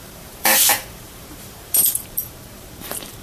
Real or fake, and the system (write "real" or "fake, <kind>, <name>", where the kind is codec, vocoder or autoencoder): fake, vocoder, BigVGAN v2